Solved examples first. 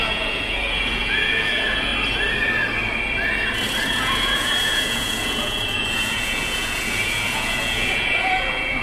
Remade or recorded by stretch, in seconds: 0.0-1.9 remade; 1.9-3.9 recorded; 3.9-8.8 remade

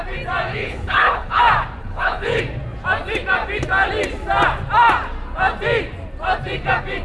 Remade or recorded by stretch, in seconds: 0.0-0.5 recorded; 0.5-1.4 remade; 1.4-1.8 recorded; 1.8-2.4 remade; 2.4-7.0 recorded

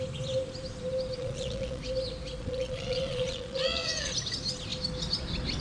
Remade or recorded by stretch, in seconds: 0.0-1.2 recorded; 1.2-1.8 remade; 1.8-2.4 recorded; 2.4-4.1 remade; 4.1-5.6 recorded

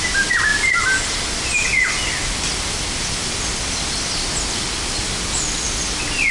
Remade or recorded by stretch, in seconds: 0.0-6.3 recorded

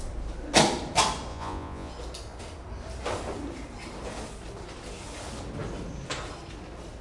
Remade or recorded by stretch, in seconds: 0.0-1.3 recorded; 1.3-1.9 remade; 1.9-7.0 recorded

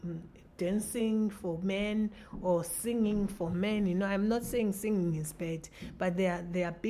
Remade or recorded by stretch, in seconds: 0.0-3.5 recorded; 3.5-4.4 remade; 4.4-6.9 recorded

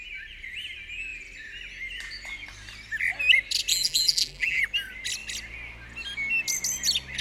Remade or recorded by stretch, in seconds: 0.0-3.7 recorded; 3.7-4.6 remade; 4.6-7.2 recorded

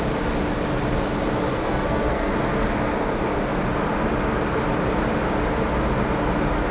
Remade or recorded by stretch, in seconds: 0.0-1.5 recorded; 1.5-2.3 remade; 2.3-6.7 recorded